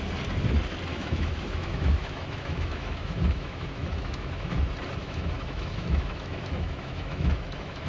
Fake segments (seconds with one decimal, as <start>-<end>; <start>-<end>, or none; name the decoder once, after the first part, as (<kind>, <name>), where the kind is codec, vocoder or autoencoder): 0.9-4.6 (autoencoder, DAC-VAE); 5.0-7.9